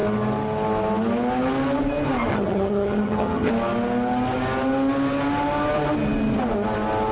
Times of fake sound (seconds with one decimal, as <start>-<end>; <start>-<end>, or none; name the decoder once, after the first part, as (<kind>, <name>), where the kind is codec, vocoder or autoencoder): 2.3-3.5 (vocoder, HiFi-GAN)